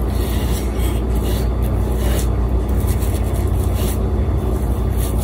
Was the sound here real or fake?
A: real